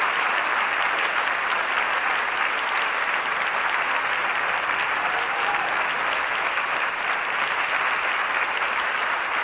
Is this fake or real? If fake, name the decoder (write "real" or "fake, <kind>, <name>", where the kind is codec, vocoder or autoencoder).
real